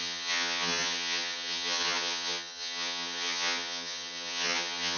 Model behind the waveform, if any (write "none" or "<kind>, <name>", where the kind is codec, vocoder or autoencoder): vocoder, HiFi-GAN